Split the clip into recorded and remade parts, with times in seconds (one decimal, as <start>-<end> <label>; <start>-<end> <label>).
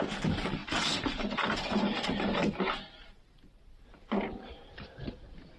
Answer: 0.0-0.6 recorded; 0.6-2.6 remade; 2.6-3.0 recorded; 3.0-5.0 remade; 5.0-5.6 recorded